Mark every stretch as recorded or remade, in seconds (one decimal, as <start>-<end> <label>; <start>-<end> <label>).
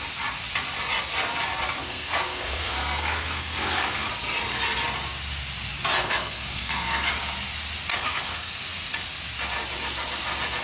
0.0-1.8 recorded; 1.8-4.1 remade; 4.1-6.0 recorded; 6.0-7.1 remade; 7.1-7.9 recorded; 7.9-8.6 remade; 8.6-10.6 recorded